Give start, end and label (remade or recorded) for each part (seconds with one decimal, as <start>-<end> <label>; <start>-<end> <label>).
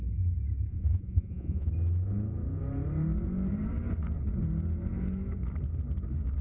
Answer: 0.0-0.7 recorded; 0.7-1.7 remade; 1.7-6.4 recorded